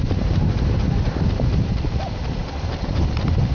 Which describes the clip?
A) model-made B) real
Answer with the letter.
A